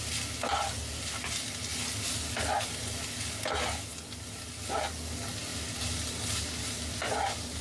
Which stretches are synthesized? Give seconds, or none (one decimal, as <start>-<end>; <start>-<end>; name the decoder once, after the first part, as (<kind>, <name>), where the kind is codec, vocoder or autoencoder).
none